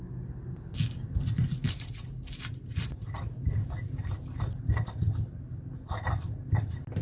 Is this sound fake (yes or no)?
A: no